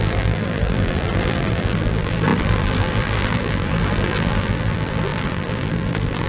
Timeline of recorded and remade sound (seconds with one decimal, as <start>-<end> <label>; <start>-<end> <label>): 0.0-6.3 remade